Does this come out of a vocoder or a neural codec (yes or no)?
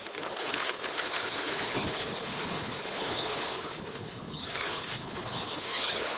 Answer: yes